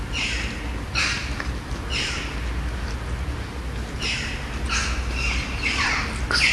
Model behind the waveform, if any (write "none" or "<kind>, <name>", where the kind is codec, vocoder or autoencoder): none